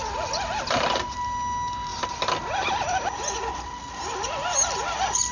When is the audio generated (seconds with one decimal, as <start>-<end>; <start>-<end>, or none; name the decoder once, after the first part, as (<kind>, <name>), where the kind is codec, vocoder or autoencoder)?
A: none